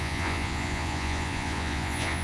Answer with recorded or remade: remade